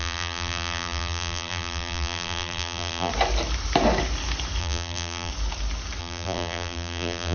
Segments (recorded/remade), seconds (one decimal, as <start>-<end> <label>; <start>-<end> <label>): 0.0-3.1 remade; 3.1-4.6 recorded; 4.6-5.3 remade; 5.3-6.0 recorded; 6.0-7.3 remade